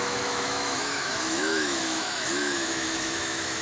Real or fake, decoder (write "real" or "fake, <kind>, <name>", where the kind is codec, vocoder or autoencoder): fake, autoencoder, DAC-VAE